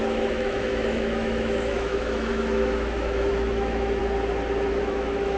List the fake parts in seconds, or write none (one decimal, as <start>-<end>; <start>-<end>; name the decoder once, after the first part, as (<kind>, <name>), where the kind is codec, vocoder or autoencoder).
0.0-4.0 (autoencoder, DAC-VAE); 4.8-5.4